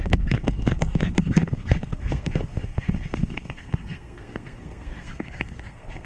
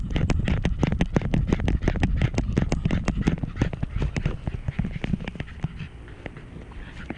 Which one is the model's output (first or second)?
first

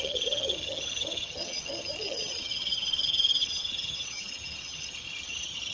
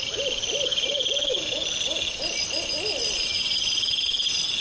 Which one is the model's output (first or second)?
first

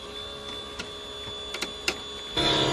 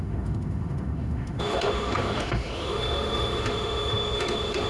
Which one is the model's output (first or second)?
second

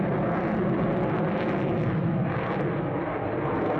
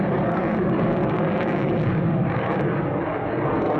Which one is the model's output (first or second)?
second